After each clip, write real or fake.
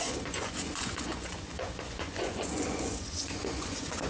fake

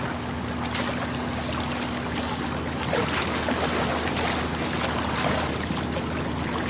real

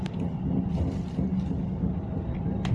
real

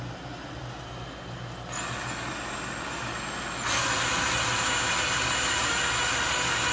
real